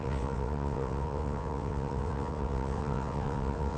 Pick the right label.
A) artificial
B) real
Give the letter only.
A